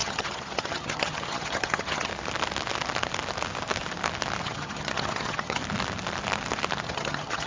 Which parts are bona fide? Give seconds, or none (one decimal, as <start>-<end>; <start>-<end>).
2.1-4.4; 5.6-6.8